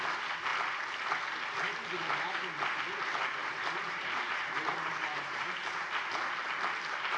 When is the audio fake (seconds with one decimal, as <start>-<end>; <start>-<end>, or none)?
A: 3.4-5.9